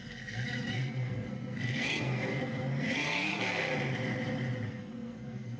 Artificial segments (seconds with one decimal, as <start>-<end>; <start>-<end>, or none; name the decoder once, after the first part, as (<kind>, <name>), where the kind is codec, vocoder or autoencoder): 0.0-3.3 (codec, SNAC); 4.7-5.6